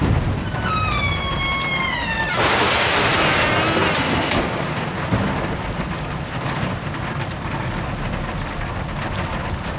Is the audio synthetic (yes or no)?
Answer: no